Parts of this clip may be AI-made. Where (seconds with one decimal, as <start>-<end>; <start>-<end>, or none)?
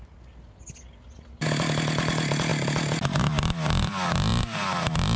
none